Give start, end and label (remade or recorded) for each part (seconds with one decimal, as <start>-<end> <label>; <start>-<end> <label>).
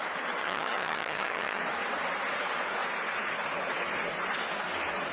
0.0-0.4 recorded; 0.4-1.6 remade; 1.6-5.1 recorded